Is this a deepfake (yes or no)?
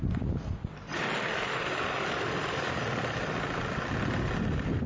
no